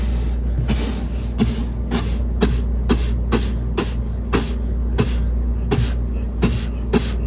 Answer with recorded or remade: recorded